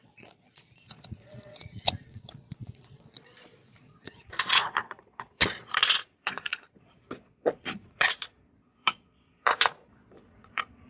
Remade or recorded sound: remade